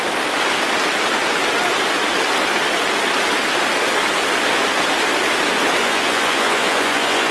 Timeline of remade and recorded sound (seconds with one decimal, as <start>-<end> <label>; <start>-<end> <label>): 0.0-5.8 recorded; 5.8-7.3 remade